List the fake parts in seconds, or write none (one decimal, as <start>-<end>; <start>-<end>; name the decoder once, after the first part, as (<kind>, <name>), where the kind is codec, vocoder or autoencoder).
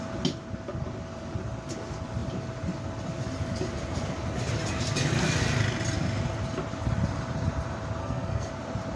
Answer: 8.0-8.5 (codec, SNAC)